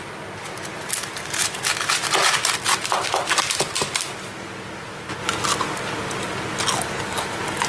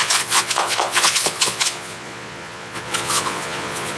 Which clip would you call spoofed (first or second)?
second